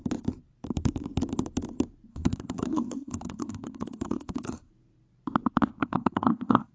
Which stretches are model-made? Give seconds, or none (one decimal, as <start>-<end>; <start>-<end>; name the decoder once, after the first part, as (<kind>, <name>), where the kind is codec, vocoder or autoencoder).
2.1-4.7 (codec, SNAC); 5.8-6.7